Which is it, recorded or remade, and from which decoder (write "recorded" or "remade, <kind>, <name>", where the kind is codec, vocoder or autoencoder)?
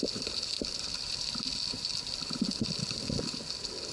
recorded